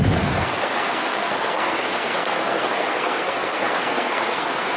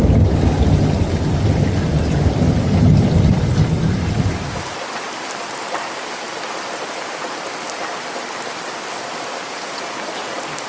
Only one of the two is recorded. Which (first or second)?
second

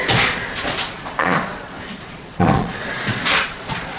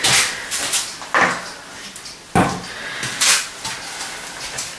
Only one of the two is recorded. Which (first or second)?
second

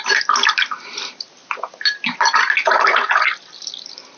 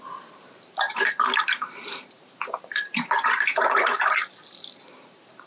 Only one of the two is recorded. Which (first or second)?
first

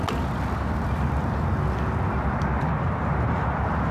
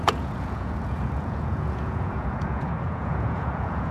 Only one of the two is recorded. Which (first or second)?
first